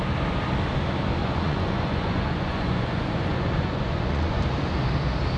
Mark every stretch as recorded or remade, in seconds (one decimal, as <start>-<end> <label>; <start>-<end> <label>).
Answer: 0.0-1.2 recorded; 1.2-4.4 remade; 4.4-5.4 recorded

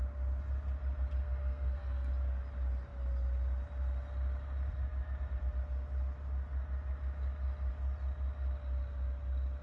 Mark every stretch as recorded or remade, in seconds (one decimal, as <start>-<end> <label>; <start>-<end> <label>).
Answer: 0.0-1.2 recorded; 1.2-2.1 remade; 2.1-9.6 recorded

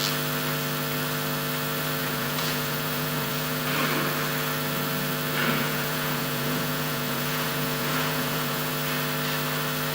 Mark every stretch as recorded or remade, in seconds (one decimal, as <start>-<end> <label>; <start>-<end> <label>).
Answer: 0.0-2.0 recorded; 2.0-3.7 remade; 3.7-5.4 recorded; 5.4-8.7 remade; 8.7-9.9 recorded

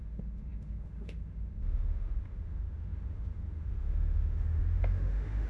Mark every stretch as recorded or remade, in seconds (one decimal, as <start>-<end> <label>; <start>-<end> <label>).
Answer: 0.0-5.5 remade

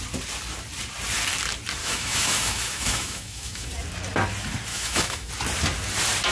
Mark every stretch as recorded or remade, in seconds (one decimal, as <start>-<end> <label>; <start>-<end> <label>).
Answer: 0.0-1.8 recorded; 1.8-3.7 remade; 3.7-4.7 recorded; 4.7-5.3 remade; 5.3-6.3 recorded